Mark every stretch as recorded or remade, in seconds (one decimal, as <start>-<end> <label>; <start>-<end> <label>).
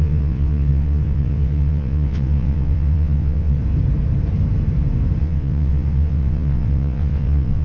0.0-3.6 remade; 3.6-5.2 recorded; 5.2-7.6 remade